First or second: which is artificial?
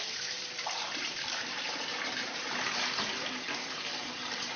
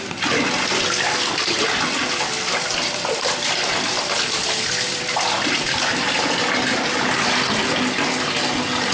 first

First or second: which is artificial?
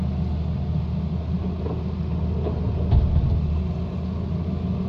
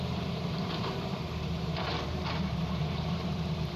second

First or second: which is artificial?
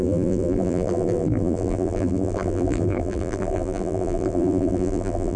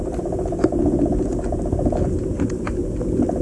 first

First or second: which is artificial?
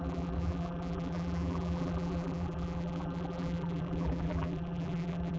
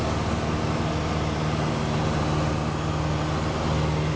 first